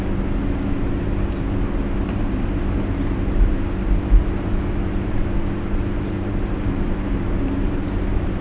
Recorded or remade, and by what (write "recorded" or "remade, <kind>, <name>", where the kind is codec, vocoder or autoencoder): remade, vocoder, BigVGAN v2